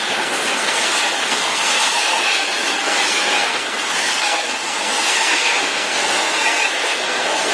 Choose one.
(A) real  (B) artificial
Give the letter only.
B